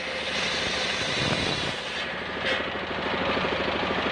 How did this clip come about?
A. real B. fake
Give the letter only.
A